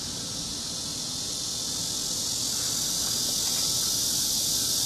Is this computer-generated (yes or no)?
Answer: no